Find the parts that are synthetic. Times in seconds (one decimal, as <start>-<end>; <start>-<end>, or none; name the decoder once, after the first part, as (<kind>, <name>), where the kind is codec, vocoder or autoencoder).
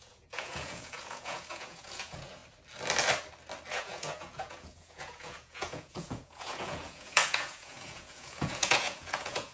0.0-2.4 (vocoder, Vocos); 3.7-9.5